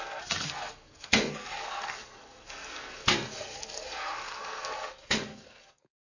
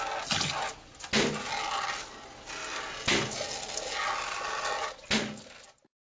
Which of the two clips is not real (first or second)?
first